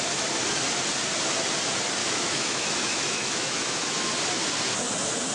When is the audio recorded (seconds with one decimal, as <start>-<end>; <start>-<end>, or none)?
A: 0.0-2.0; 4.1-5.3